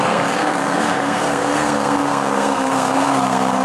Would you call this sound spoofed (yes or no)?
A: yes